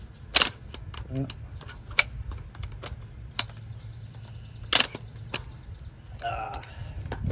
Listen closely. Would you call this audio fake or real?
real